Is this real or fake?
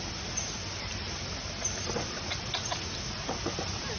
real